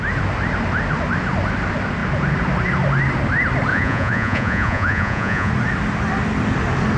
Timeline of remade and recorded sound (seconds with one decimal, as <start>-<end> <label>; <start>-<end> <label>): 0.0-3.7 recorded; 3.7-5.5 remade; 5.5-7.0 recorded